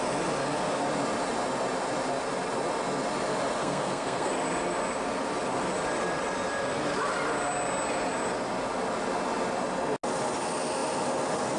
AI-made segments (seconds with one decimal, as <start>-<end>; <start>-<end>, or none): 3.6-4.3